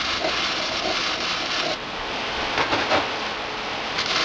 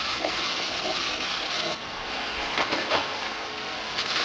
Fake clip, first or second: second